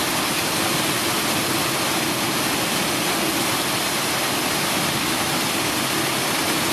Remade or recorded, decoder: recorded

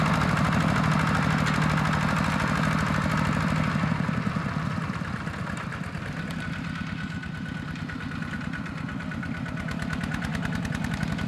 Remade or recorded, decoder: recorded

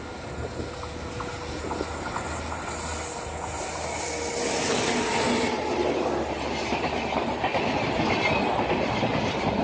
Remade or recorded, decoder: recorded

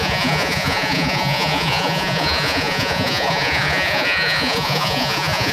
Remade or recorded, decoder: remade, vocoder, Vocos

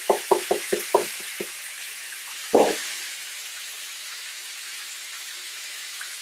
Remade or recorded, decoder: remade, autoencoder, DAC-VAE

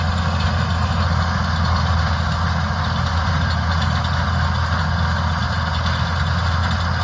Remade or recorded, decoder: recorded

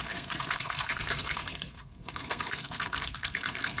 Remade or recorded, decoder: remade, codec, SNAC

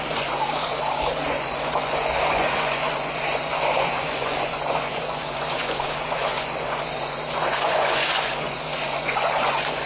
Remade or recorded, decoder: remade, vocoder, Vocos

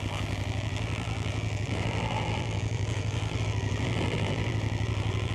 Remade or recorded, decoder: remade, vocoder, BigVGAN v2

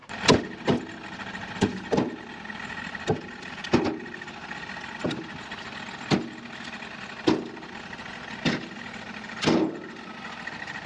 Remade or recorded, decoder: recorded